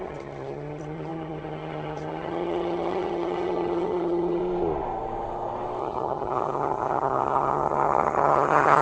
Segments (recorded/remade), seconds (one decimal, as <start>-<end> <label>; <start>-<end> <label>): 0.0-4.4 remade; 4.4-5.8 recorded; 5.8-8.8 remade